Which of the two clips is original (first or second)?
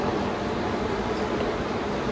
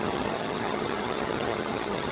first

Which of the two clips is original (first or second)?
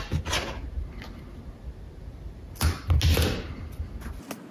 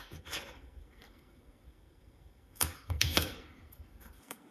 first